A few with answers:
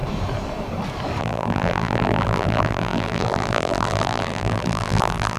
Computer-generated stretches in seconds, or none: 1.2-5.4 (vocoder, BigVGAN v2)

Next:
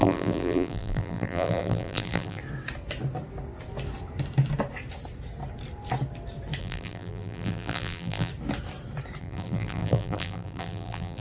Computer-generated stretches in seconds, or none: 0.0-2.4 (vocoder, BigVGAN v2); 6.6-8.3; 9.2-11.2

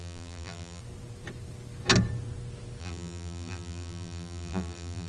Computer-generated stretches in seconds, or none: 0.0-0.8 (vocoder, BigVGAN v2); 2.8-5.1

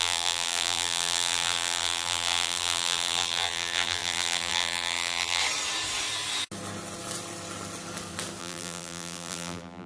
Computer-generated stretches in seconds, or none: 0.0-5.4 (vocoder, BigVGAN v2); 8.4-9.9

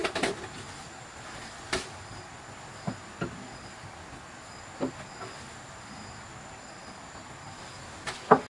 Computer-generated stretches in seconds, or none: 0.0-2.4 (vocoder, BigVGAN v2)